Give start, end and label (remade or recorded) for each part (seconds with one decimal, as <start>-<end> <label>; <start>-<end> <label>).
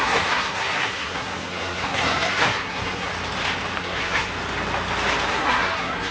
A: 0.0-3.1 remade; 3.1-3.8 recorded; 3.8-4.3 remade; 4.3-5.3 recorded; 5.3-6.1 remade